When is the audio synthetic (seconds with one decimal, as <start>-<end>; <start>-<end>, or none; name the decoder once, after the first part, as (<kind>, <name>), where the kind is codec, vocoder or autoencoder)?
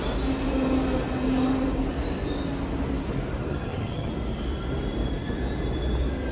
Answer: 3.5-4.1 (vocoder, HiFi-GAN)